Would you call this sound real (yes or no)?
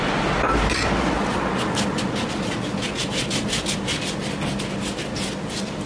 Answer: yes